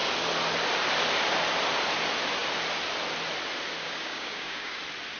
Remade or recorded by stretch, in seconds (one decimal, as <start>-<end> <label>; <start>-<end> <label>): 0.0-3.8 recorded; 3.8-4.8 remade; 4.8-5.2 recorded